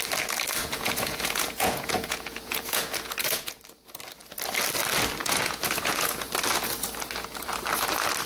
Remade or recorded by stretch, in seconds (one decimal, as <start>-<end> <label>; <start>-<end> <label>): 0.0-0.6 recorded; 0.6-3.6 remade; 3.6-5.2 recorded; 5.2-6.3 remade; 6.3-8.3 recorded

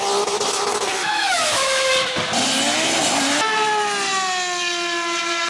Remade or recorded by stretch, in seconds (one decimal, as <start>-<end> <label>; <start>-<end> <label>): 0.0-1.0 recorded; 1.0-1.9 remade; 1.9-5.5 recorded

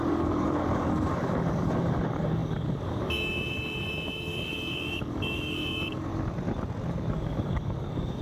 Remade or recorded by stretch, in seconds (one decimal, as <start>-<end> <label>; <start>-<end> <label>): 0.0-6.1 remade; 6.1-7.1 recorded; 7.1-8.2 remade

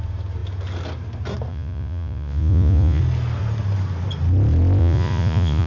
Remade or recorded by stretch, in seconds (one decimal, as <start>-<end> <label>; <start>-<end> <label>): 0.0-1.5 recorded; 1.5-3.0 remade; 3.0-4.8 recorded; 4.8-5.7 remade

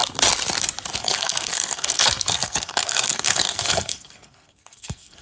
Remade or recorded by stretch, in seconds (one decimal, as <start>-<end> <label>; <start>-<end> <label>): 0.0-1.0 recorded; 1.0-5.2 remade